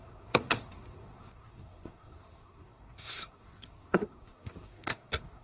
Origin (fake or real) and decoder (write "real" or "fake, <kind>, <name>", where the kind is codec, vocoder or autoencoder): fake, codec, SNAC